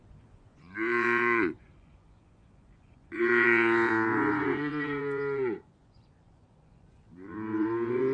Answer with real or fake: fake